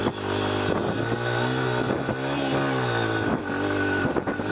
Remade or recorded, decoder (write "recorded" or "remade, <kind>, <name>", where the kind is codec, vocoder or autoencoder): recorded